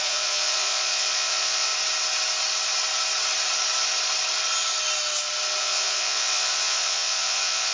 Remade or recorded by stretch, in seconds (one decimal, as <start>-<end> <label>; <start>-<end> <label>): 0.0-1.7 remade; 1.7-5.6 recorded; 5.6-7.7 remade